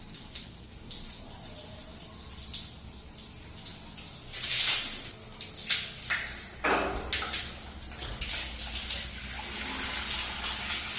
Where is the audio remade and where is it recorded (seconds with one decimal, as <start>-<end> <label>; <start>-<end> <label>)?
0.0-11.0 recorded